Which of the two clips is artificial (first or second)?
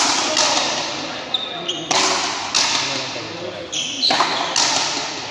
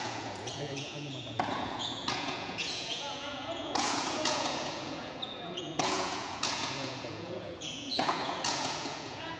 second